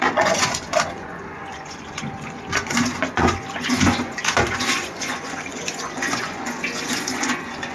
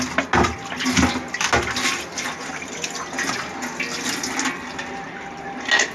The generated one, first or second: first